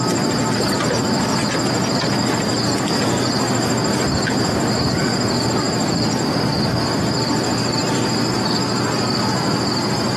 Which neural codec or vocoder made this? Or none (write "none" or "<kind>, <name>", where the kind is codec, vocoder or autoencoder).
none